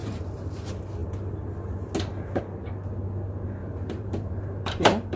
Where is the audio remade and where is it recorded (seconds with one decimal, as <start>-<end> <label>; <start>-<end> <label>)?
0.0-0.6 remade; 0.6-3.6 recorded; 3.6-5.2 remade